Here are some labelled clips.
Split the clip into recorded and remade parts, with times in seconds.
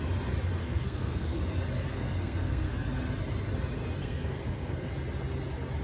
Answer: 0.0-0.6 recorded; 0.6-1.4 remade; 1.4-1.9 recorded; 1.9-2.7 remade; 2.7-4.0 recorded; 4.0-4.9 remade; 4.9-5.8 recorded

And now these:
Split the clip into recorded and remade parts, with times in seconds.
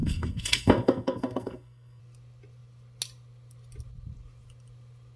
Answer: 0.0-2.0 remade; 2.0-5.2 recorded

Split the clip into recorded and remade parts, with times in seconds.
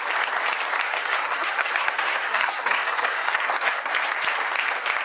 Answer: 0.0-0.9 recorded; 0.9-3.9 remade; 3.9-5.0 recorded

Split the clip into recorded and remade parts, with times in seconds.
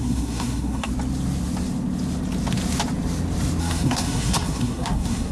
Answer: 0.0-0.9 remade; 0.9-3.6 recorded; 3.6-5.3 remade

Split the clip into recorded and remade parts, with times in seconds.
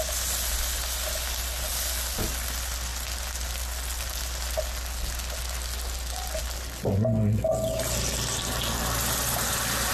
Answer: 0.0-9.9 recorded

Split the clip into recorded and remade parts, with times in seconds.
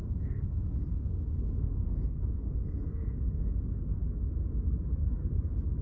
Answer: 0.0-3.5 remade; 3.5-5.8 recorded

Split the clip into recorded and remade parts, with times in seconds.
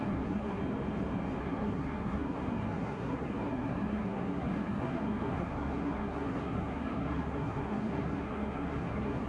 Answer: 0.0-0.6 remade; 0.6-1.4 recorded; 1.4-9.3 remade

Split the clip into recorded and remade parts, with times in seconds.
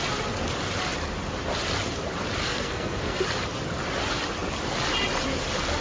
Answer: 0.0-2.4 recorded; 2.4-3.2 remade; 3.2-5.8 recorded